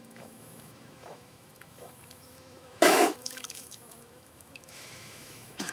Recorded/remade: remade